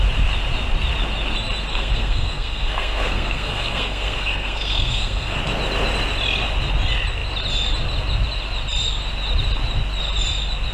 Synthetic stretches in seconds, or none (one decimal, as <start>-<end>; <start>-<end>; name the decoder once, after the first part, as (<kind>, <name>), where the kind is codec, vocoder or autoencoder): 1.7-5.4 (codec, SNAC)